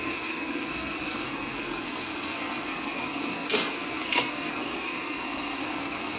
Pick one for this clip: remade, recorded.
remade